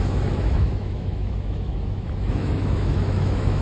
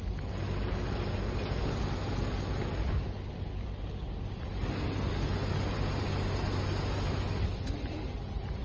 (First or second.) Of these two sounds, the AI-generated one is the first